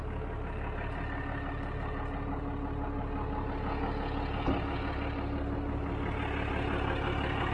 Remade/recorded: recorded